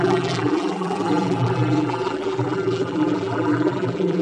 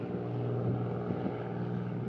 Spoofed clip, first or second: first